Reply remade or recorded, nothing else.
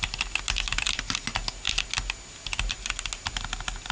recorded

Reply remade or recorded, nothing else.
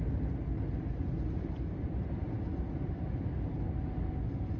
recorded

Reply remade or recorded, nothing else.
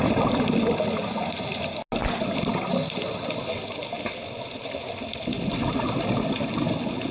recorded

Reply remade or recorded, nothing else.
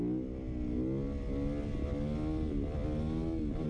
recorded